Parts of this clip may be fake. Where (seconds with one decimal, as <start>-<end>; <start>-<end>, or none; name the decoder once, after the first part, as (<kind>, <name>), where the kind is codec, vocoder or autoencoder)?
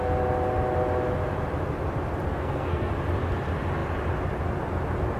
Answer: 2.3-2.9 (codec, SNAC)